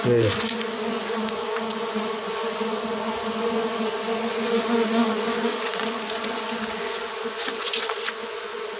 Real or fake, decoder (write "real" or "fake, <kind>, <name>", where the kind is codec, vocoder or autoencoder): fake, vocoder, Vocos